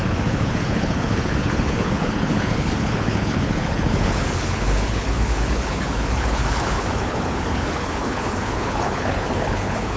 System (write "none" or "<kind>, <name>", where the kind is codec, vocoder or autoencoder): codec, HILCodec